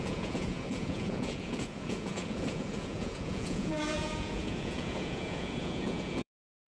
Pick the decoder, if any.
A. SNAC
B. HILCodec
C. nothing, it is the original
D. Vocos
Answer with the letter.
D